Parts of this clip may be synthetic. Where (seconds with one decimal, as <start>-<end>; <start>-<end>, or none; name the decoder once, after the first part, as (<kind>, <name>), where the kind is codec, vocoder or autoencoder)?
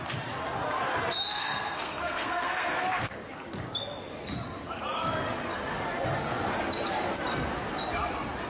1.4-2.8 (codec, SNAC)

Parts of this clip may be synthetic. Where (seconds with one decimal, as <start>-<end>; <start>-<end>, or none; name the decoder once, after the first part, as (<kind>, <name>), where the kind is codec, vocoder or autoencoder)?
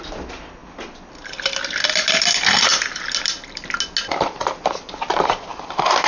none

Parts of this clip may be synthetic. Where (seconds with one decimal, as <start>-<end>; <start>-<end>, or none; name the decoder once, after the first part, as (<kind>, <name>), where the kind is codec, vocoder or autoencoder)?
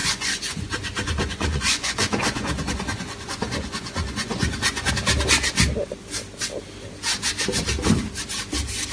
0.0-4.9 (vocoder, Vocos)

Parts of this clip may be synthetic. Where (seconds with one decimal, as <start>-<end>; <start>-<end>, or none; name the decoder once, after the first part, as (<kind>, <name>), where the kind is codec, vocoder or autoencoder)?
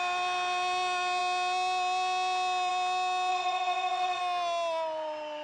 3.3-4.2 (vocoder, WaveNeXt)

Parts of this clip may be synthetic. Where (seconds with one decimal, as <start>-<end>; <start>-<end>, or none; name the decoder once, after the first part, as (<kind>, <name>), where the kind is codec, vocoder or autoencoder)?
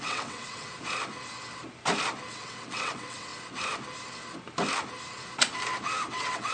0.0-0.7 (vocoder, WaveNeXt); 2.3-3.3; 6.1-6.5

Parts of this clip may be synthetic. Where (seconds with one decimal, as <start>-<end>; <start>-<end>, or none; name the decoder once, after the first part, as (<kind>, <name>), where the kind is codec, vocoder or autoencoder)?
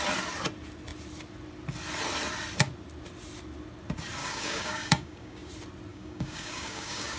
4.2-5.5 (codec, DAC); 5.9-7.2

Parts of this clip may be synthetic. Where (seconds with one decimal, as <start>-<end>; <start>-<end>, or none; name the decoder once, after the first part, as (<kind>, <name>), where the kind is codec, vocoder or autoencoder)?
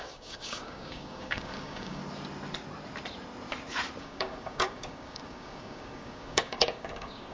0.0-2.0 (codec, DAC); 4.0-7.3